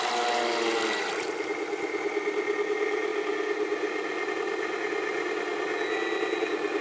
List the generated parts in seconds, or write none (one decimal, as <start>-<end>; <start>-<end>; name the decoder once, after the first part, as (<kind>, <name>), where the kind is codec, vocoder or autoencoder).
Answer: none

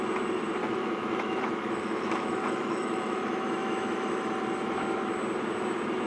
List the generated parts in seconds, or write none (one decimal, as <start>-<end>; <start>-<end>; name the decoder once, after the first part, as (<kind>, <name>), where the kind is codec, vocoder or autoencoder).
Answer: 0.6-4.3 (autoencoder, DAC-VAE)

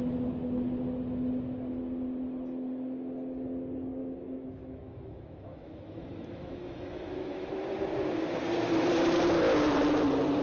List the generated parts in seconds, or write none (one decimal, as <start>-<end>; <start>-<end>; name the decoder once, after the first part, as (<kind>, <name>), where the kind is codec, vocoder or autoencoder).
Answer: 4.0-7.5 (autoencoder, DAC-VAE)

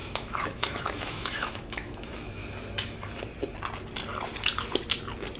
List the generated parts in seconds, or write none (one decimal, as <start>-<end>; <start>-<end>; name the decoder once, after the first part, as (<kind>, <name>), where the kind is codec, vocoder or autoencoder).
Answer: 0.0-2.4 (autoencoder, DAC-VAE)

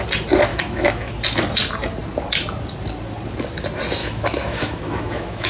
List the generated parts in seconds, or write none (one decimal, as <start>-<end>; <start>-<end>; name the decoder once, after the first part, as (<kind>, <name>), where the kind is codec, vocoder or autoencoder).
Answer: 0.5-1.1 (autoencoder, DAC-VAE); 4.0-5.5

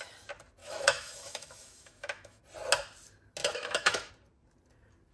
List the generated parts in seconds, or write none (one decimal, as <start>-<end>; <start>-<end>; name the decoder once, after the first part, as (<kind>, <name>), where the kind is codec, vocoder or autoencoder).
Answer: 0.6-2.4 (autoencoder, DAC-VAE); 3.4-4.1